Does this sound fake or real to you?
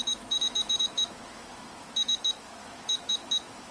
fake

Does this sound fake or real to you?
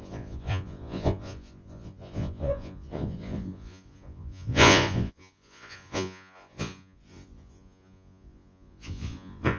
fake